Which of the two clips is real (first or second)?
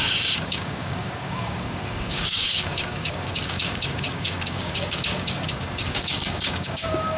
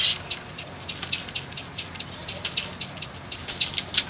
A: second